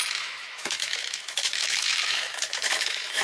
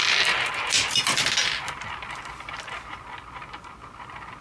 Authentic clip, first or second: second